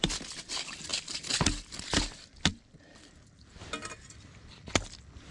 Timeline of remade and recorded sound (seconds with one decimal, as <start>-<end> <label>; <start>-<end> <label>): 0.0-5.3 recorded